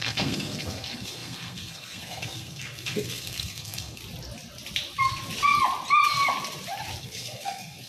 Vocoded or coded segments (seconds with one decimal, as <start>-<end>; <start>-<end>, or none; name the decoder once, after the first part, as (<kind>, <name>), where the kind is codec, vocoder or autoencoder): 0.0-4.0 (codec, SNAC); 7.0-7.9